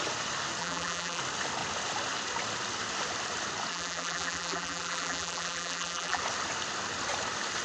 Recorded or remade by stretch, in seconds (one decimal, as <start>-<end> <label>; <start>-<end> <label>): 0.0-0.6 recorded; 0.6-1.2 remade; 1.2-3.7 recorded; 3.7-6.2 remade; 6.2-7.6 recorded